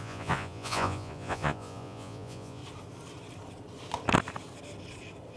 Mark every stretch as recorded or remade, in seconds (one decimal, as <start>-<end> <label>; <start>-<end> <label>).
0.0-2.6 remade; 2.6-5.4 recorded